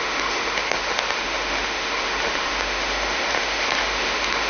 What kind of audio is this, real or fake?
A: fake